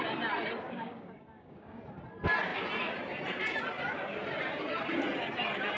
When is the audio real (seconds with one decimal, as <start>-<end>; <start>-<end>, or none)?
0.0-0.6; 1.8-5.8